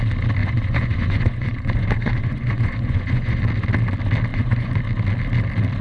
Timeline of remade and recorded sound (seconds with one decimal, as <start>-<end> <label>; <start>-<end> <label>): 0.0-0.4 recorded; 0.4-3.4 remade; 3.4-4.3 recorded; 4.3-4.8 remade; 4.8-5.8 recorded